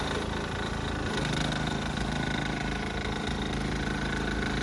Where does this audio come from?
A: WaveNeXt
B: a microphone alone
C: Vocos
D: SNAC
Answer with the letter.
B